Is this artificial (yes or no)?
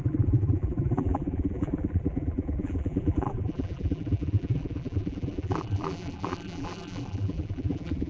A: yes